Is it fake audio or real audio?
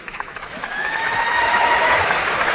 fake